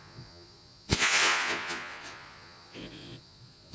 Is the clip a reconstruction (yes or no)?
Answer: yes